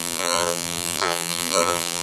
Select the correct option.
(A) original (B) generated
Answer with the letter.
B